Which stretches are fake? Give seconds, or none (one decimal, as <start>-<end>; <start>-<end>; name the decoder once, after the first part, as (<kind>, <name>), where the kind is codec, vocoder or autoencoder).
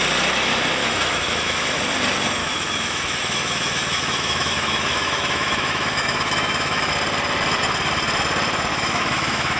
0.8-1.8 (autoencoder, DAC-VAE); 2.4-6.9; 8.7-9.6